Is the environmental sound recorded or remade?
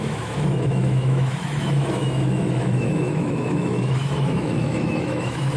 remade